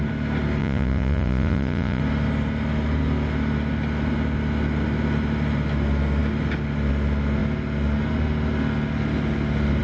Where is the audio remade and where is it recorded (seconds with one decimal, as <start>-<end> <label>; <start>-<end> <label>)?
0.0-0.6 recorded; 0.6-2.0 remade; 2.0-9.8 recorded